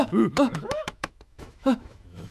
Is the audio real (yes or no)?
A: no